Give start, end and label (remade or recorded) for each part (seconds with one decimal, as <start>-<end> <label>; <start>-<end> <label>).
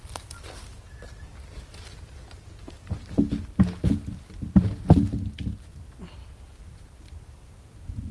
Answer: 0.0-8.1 recorded